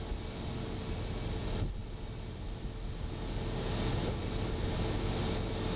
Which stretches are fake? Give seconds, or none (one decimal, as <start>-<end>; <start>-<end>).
none